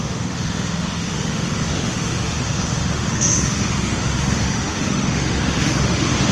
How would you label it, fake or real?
fake